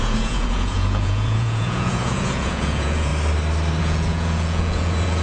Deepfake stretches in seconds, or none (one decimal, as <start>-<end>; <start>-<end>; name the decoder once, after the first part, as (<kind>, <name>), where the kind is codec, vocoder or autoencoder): 0.0-3.1 (vocoder, Vocos); 3.8-5.2